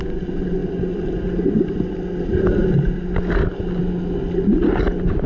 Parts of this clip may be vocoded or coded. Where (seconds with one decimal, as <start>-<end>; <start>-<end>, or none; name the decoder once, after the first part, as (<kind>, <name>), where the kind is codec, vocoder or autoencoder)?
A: none